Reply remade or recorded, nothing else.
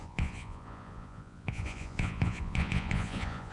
remade